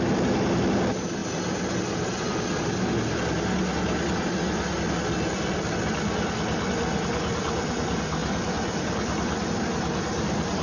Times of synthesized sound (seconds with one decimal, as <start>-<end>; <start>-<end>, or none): none